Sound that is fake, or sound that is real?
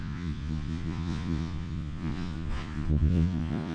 fake